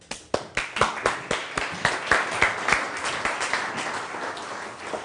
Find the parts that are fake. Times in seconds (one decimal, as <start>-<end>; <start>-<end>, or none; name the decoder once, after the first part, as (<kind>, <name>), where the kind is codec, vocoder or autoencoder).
1.4-1.9 (vocoder, BigVGAN v2)